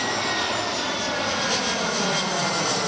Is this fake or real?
real